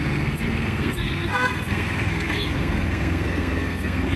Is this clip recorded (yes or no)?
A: no